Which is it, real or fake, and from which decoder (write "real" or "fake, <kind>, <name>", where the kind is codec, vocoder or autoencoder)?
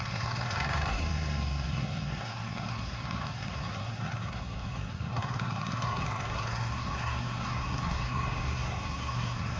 fake, codec, SNAC